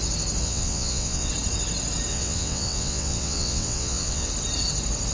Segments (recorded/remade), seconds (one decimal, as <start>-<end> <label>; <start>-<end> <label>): 0.0-0.4 recorded; 0.4-1.3 remade; 1.3-2.1 recorded; 2.1-4.3 remade; 4.3-5.1 recorded